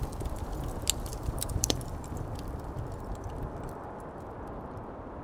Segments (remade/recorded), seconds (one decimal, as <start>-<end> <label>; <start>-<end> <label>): 0.0-1.1 recorded; 1.1-4.2 remade; 4.2-5.2 recorded